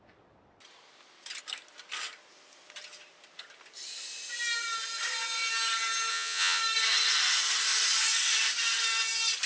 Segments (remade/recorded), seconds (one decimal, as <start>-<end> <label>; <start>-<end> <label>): 0.0-6.1 recorded; 6.1-6.6 remade; 6.6-9.5 recorded